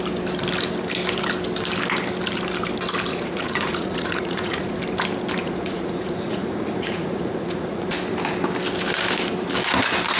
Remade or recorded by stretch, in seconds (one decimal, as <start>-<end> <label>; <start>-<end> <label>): 0.0-3.1 recorded; 3.1-4.8 remade; 4.8-5.4 recorded; 5.4-7.9 remade; 7.9-10.2 recorded